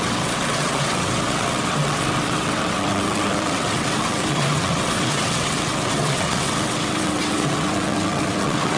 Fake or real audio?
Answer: fake